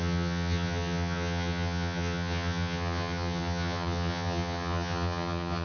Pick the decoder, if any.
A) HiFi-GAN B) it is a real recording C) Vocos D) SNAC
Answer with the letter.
A